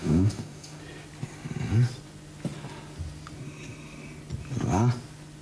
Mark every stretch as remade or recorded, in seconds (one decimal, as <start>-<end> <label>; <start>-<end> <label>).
0.0-0.8 remade; 0.8-5.4 recorded